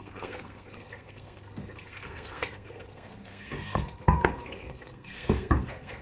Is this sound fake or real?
fake